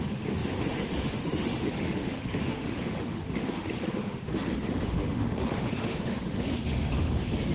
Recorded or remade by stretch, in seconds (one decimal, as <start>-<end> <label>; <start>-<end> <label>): 0.0-7.5 remade